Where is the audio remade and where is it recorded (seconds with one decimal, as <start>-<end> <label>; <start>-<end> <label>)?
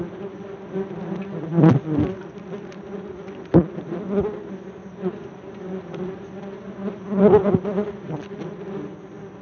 0.0-9.4 recorded